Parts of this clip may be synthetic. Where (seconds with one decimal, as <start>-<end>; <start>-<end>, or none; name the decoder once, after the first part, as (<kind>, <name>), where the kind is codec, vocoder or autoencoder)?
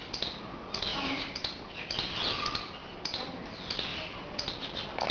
0.9-1.8 (vocoder, BigVGAN v2); 2.8-3.5; 3.9-4.5